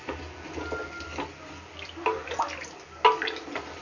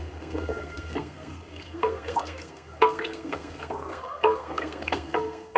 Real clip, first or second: first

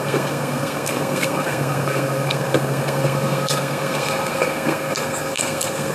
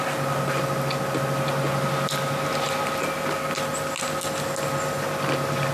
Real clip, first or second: second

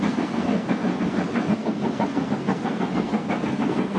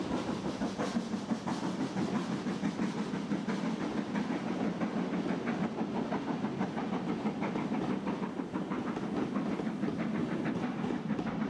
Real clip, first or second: second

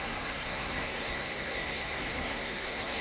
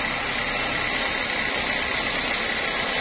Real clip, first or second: second